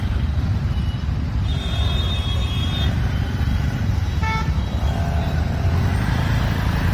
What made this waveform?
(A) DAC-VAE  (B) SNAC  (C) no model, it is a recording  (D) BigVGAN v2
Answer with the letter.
D